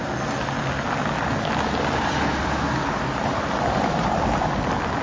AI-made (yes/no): no